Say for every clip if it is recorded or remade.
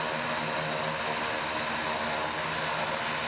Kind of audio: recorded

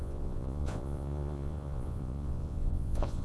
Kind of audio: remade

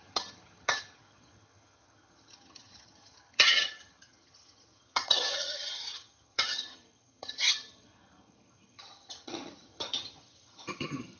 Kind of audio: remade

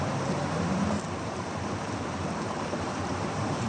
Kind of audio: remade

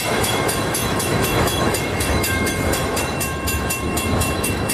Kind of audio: remade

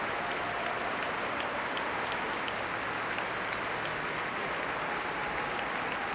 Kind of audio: recorded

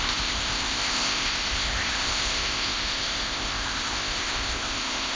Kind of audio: remade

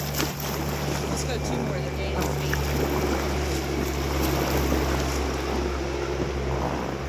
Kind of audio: recorded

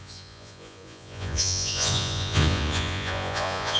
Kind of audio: remade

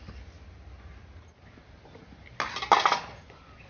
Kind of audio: recorded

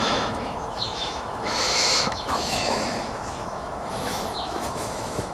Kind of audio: remade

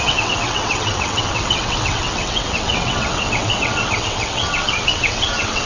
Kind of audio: remade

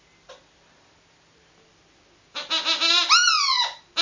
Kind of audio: recorded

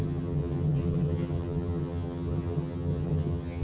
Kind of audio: remade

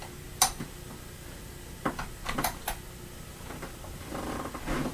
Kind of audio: recorded